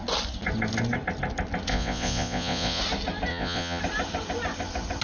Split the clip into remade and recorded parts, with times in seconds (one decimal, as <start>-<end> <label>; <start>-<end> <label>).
0.0-1.7 recorded; 1.7-2.8 remade; 2.8-3.3 recorded; 3.3-3.8 remade; 3.8-5.0 recorded